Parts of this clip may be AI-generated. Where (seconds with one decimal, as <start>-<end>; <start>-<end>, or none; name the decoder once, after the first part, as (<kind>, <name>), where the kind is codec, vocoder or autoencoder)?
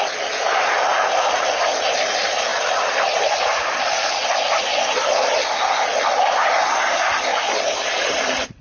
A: none